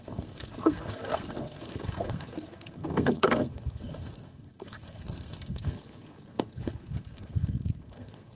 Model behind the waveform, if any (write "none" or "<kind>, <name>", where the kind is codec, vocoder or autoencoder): codec, SNAC